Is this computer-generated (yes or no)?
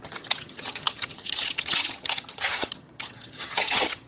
yes